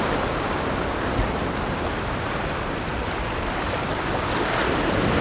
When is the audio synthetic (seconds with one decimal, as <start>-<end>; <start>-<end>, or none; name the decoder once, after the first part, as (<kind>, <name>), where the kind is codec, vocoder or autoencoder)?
none

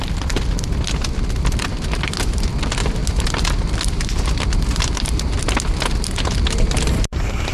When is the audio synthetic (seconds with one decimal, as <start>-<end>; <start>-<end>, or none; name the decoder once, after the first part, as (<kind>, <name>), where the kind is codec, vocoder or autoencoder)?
none

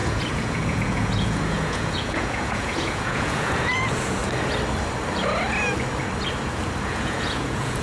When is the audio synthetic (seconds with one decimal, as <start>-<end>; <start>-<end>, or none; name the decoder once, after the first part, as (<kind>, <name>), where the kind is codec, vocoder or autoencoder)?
0.0-4.2 (vocoder, Vocos); 6.8-7.8

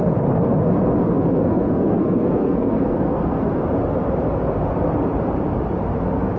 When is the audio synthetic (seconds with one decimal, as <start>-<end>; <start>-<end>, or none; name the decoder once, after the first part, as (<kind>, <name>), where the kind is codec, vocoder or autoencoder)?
1.2-3.5 (codec, SNAC)

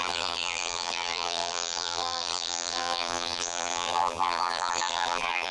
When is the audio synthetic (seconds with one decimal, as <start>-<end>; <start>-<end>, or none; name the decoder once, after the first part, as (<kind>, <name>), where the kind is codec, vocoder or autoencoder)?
0.0-5.5 (vocoder, BigVGAN v2)

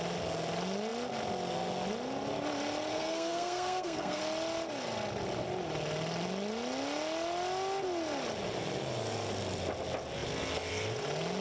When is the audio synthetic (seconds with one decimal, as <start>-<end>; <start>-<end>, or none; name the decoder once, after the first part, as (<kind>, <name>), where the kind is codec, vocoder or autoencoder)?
2.9-4.2 (codec, SNAC)

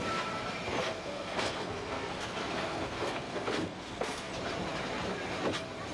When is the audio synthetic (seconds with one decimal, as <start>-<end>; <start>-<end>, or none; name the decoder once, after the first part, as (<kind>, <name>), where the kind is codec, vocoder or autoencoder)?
0.8-4.3 (codec, SNAC)

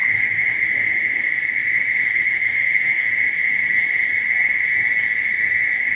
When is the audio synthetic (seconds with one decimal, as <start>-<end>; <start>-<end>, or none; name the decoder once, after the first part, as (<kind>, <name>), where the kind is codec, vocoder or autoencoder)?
none